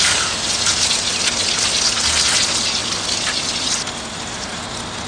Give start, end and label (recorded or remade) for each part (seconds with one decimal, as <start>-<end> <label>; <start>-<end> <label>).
0.0-5.1 recorded